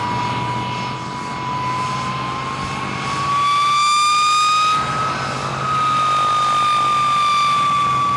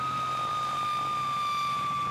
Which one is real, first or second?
first